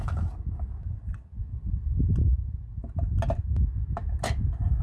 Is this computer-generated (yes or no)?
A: no